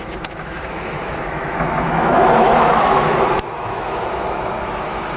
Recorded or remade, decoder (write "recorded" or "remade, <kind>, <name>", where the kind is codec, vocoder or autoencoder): remade, autoencoder, DAC-VAE